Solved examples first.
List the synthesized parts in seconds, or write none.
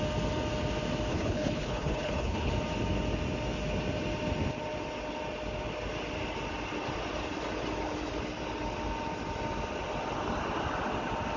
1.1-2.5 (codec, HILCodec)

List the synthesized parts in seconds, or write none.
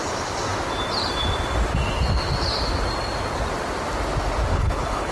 4.5-5.1 (codec, HILCodec)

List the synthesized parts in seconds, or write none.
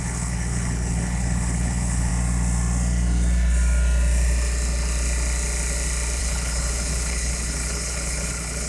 0.0-2.1 (codec, HILCodec); 6.2-8.7